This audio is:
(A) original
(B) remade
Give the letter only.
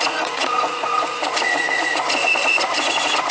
B